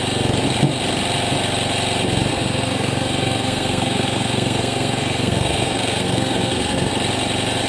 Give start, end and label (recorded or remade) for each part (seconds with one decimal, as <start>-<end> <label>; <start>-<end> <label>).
0.0-2.3 recorded; 2.3-6.9 remade; 6.9-7.7 recorded